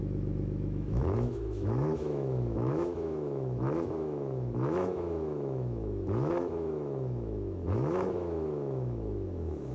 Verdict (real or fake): fake